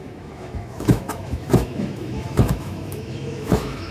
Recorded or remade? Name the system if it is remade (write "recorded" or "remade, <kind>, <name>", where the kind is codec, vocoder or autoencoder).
remade, autoencoder, DAC-VAE